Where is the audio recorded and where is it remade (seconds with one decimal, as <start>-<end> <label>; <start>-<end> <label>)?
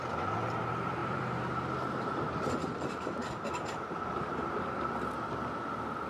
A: 0.0-1.0 recorded; 1.0-4.7 remade; 4.7-6.1 recorded